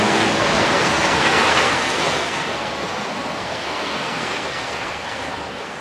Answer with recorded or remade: remade